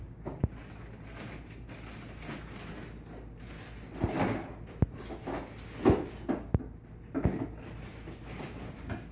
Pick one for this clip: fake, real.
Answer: real